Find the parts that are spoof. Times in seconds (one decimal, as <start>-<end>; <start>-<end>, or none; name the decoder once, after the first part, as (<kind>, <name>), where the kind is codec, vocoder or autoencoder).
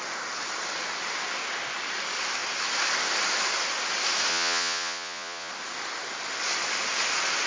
4.3-5.5 (vocoder, Vocos)